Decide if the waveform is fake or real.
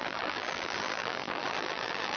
fake